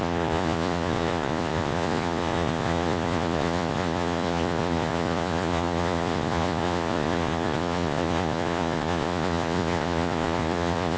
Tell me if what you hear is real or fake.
fake